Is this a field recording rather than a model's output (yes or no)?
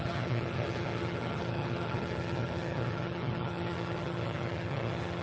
no